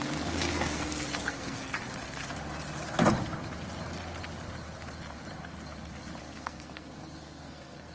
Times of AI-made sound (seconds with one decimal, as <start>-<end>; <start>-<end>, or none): 0.0-1.6; 6.2-7.9